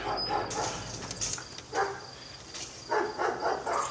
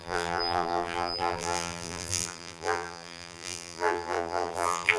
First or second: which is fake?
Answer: second